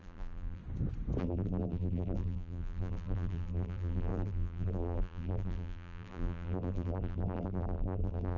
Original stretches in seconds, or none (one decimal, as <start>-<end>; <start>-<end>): 0.6-1.2